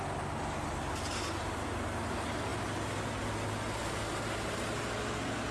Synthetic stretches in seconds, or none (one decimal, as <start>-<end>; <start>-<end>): none